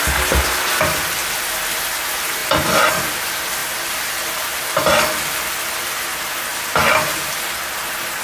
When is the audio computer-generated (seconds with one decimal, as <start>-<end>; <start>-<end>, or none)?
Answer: none